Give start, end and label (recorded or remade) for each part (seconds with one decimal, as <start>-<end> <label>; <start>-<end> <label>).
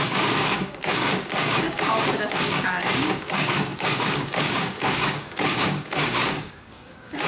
0.0-7.3 remade